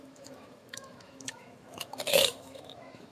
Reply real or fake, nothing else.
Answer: fake